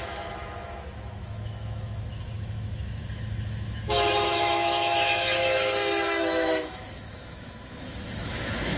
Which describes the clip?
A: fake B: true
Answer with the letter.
A